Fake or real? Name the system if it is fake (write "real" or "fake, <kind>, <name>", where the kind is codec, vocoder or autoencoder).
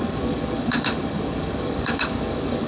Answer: fake, codec, DAC